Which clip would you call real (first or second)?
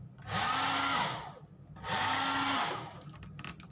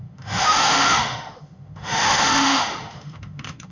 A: first